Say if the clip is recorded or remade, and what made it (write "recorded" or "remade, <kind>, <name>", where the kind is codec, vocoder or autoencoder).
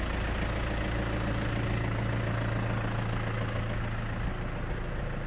recorded